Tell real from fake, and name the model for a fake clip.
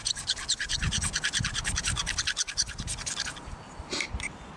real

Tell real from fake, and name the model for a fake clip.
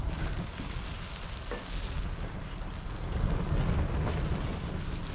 real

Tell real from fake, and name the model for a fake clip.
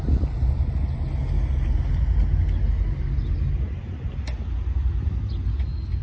real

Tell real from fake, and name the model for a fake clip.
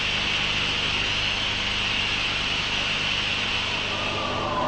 real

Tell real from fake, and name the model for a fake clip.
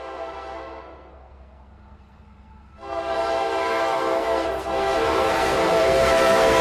fake, codec, SNAC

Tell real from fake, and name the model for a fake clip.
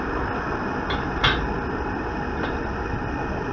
real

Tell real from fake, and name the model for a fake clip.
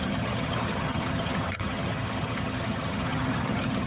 fake, vocoder, HiFi-GAN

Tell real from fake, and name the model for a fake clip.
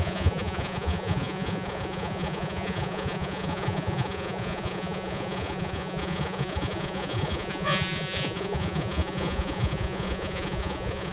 fake, vocoder, Vocos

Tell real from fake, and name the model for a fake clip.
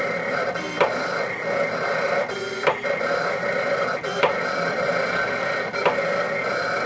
fake, vocoder, BigVGAN v2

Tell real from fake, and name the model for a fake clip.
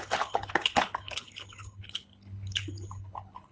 fake, codec, HILCodec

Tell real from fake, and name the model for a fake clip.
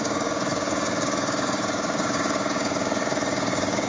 fake, codec, DAC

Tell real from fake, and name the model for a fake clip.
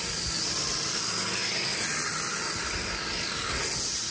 real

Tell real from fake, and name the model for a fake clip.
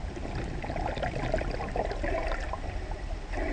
real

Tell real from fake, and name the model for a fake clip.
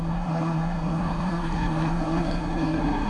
fake, codec, SNAC